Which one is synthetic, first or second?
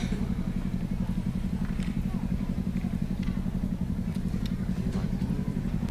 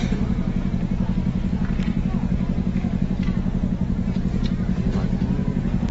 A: first